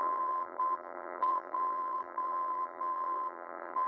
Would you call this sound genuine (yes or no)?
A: no